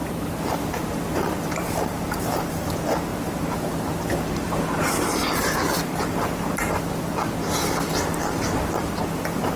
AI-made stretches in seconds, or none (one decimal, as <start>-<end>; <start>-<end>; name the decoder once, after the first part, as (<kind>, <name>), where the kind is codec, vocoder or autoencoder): 0.0-2.2 (vocoder, BigVGAN v2); 3.1-6.8

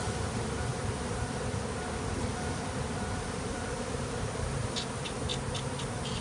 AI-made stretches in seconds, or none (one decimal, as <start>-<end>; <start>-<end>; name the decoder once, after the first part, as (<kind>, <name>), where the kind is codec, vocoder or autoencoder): 0.0-5.3 (vocoder, BigVGAN v2)

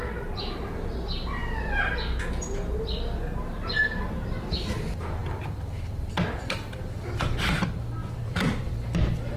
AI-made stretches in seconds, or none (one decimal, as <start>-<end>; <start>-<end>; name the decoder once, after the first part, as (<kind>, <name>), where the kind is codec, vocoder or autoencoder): 8.0-9.0 (vocoder, BigVGAN v2)

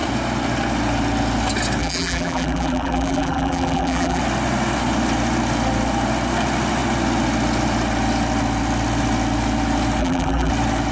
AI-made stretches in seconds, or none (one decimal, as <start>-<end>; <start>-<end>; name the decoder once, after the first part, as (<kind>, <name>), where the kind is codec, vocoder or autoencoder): 1.8-4.2 (vocoder, BigVGAN v2); 10.0-10.5

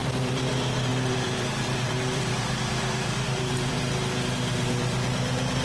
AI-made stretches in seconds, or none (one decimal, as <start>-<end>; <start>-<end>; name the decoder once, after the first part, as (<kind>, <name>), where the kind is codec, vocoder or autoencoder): 0.0-0.5 (vocoder, BigVGAN v2); 0.9-3.8

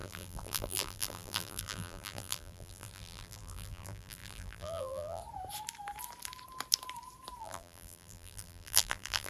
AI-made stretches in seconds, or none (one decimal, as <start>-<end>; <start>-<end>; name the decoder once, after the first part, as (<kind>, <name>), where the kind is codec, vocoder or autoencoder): 0.0-5.2 (vocoder, BigVGAN v2); 7.4-9.3

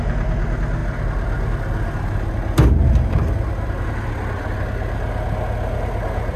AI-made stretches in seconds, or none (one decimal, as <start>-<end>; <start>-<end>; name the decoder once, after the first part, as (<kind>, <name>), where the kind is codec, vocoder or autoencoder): none